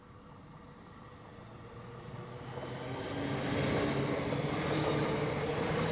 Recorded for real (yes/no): yes